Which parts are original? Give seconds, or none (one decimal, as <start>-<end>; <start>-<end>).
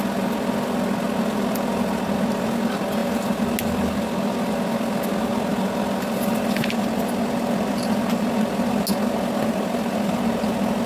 0.0-10.9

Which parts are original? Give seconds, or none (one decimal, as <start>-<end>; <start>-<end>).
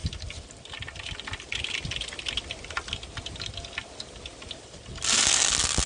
0.0-5.9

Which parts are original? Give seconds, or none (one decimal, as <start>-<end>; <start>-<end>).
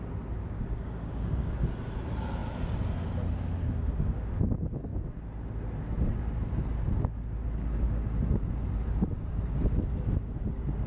0.0-0.4; 1.7-10.9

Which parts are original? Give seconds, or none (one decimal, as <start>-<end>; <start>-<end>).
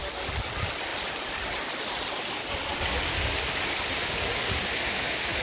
0.0-5.4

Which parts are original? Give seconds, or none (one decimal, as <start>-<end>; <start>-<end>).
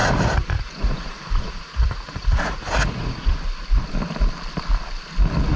3.4-5.6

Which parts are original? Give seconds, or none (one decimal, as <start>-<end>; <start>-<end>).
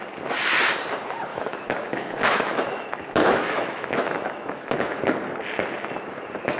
0.0-1.3; 5.0-6.6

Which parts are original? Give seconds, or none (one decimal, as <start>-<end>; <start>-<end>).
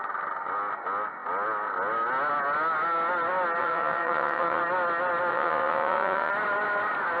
0.0-3.6; 4.6-5.3; 6.3-7.2